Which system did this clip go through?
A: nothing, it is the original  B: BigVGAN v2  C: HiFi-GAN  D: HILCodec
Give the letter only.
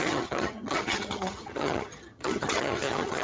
C